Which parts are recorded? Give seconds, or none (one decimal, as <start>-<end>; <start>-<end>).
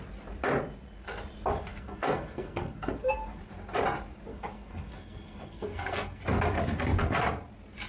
0.0-1.7; 3.4-4.3; 6.2-7.9